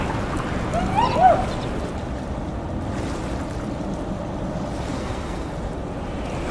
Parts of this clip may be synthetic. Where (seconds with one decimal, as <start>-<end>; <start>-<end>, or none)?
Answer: 4.9-5.5